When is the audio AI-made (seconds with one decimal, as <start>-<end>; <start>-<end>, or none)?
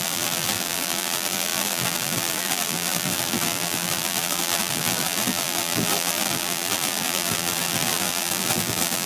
0.0-9.1